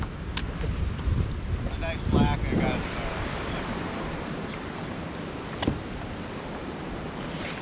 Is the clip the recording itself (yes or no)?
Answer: yes